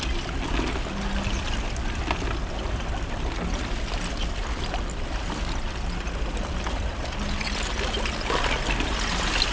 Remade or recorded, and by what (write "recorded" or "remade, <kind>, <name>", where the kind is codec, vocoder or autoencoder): recorded